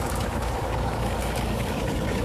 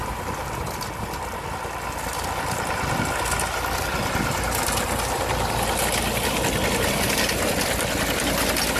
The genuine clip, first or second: second